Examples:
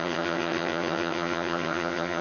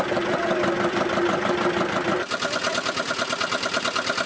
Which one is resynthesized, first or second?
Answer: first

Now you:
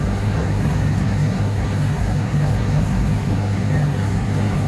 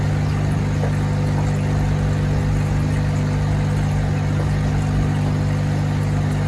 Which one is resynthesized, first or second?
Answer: first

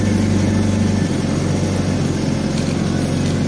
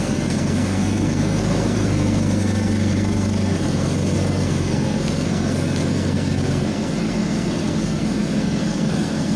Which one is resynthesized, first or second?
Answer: second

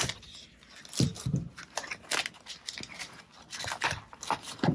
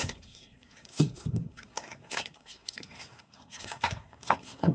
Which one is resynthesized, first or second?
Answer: second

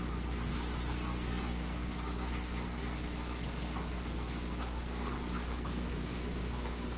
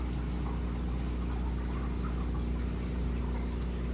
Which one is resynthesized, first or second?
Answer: first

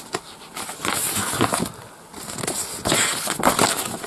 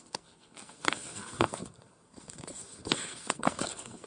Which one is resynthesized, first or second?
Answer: second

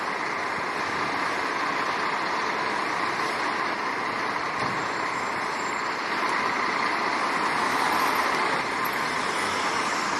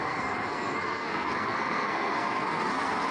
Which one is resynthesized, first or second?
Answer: second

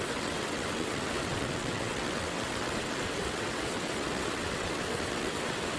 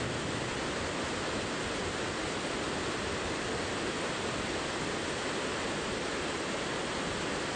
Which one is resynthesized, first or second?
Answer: first